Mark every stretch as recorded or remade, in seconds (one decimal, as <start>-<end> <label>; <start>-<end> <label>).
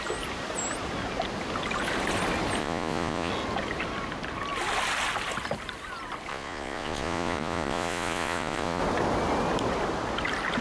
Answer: 0.0-2.6 recorded; 2.6-3.3 remade; 3.3-6.3 recorded; 6.3-8.8 remade; 8.8-10.6 recorded